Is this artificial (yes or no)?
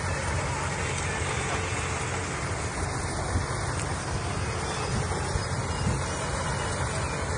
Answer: no